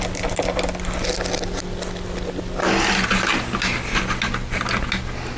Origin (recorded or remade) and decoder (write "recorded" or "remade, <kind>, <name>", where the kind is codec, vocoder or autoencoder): recorded